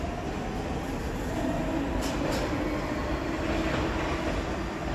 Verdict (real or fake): real